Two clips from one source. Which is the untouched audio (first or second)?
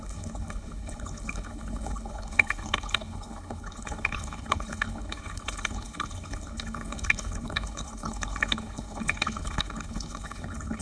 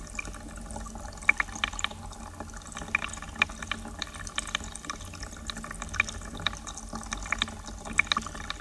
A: second